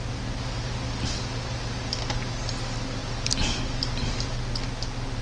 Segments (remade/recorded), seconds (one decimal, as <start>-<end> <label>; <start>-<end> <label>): 0.0-5.2 recorded